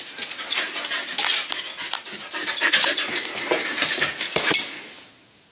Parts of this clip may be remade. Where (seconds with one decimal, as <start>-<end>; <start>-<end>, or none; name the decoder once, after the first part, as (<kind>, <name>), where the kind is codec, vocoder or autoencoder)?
none